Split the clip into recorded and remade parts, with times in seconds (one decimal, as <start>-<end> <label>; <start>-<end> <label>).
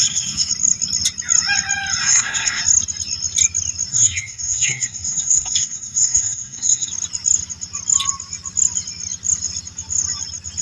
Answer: 0.0-0.5 remade; 0.5-2.0 recorded; 2.0-2.6 remade; 2.6-3.9 recorded; 3.9-6.9 remade; 6.9-10.6 recorded